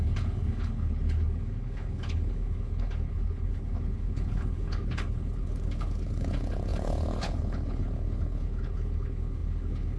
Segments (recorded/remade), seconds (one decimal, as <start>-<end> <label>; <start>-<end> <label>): 0.0-10.0 remade